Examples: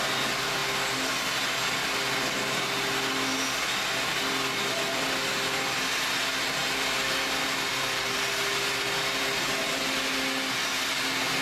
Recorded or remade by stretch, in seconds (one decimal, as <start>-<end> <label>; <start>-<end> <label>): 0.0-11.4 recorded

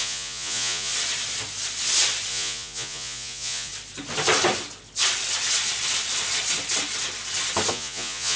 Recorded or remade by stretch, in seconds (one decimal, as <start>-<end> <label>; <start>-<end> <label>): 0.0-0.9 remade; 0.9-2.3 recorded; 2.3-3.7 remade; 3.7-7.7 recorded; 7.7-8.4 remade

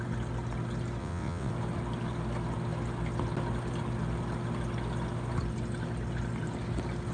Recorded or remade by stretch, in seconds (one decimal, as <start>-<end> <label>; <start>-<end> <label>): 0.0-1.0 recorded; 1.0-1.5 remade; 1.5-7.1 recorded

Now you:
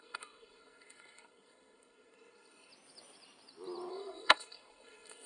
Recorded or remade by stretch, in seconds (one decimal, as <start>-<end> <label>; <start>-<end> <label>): 0.0-2.7 remade; 2.7-3.9 recorded; 3.9-5.3 remade

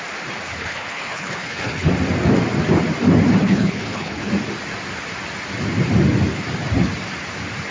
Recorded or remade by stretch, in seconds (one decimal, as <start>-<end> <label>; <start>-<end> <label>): 0.0-0.6 recorded; 0.6-1.9 remade; 1.9-3.4 recorded; 3.4-4.3 remade; 4.3-7.7 recorded